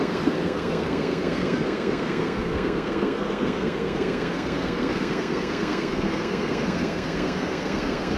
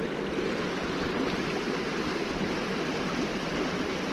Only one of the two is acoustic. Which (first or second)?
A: second